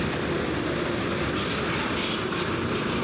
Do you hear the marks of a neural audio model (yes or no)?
no